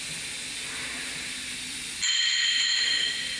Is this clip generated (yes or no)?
no